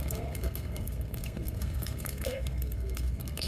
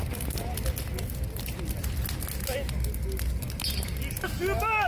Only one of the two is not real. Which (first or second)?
first